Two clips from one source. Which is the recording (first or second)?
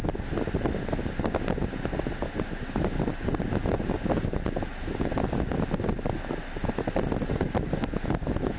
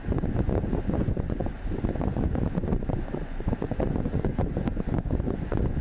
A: first